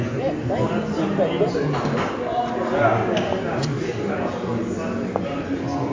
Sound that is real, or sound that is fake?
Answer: real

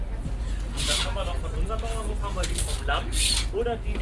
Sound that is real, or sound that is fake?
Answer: real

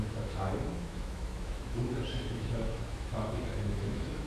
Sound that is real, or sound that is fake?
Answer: fake